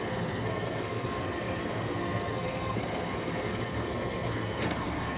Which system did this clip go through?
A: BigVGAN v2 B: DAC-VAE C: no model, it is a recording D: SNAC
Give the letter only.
D